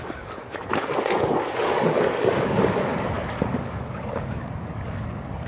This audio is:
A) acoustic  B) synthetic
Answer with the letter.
B